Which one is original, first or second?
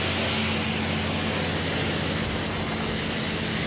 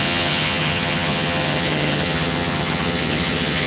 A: first